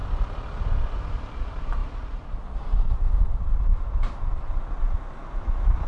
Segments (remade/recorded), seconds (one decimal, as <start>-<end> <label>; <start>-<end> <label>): 0.0-5.2 recorded; 5.2-5.9 remade